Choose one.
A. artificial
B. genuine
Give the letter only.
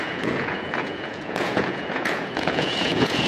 A